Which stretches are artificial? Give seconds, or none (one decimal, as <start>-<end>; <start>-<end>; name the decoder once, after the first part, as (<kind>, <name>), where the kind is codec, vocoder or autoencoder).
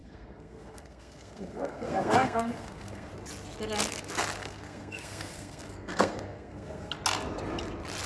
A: 0.0-3.1 (codec, SNAC); 4.4-6.9